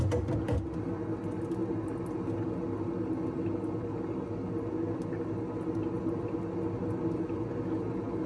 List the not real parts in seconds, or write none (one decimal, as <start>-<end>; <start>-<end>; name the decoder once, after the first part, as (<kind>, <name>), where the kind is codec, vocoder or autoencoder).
none